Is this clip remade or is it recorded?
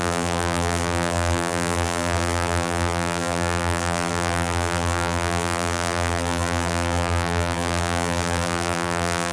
remade